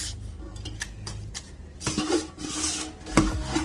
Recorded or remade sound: recorded